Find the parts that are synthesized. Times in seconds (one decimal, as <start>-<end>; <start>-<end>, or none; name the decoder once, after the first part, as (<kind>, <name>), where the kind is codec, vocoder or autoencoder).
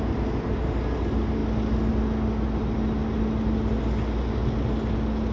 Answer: none